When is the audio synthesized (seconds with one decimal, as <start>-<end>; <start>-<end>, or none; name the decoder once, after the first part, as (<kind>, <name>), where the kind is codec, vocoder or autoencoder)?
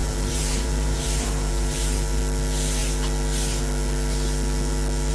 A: 0.0-2.2 (vocoder, BigVGAN v2)